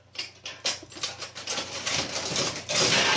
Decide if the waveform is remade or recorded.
remade